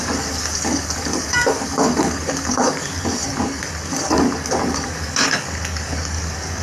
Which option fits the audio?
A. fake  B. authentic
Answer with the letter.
A